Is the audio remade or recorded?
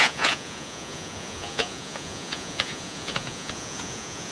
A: remade